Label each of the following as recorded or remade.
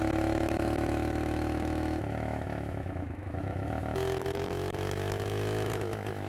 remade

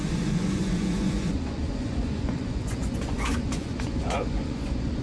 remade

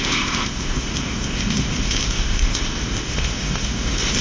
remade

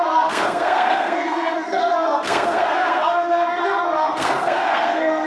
remade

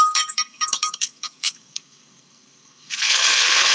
remade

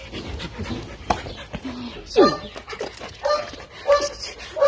recorded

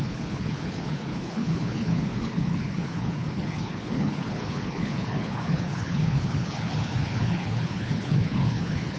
remade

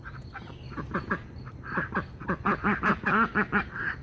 recorded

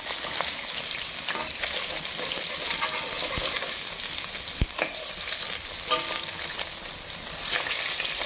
recorded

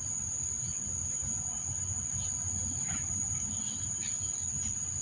recorded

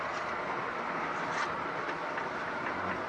recorded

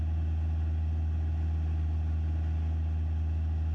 recorded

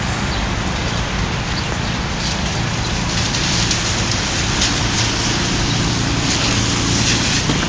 recorded